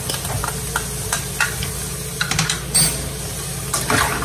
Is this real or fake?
real